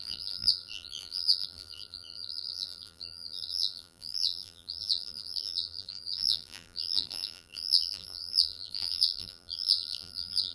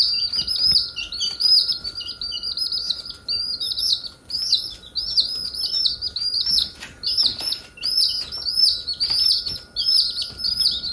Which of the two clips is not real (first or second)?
first